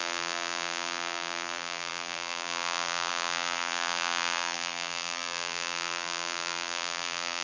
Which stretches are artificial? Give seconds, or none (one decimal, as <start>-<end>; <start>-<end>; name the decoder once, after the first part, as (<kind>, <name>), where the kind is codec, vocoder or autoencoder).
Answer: 0.0-7.4 (vocoder, BigVGAN v2)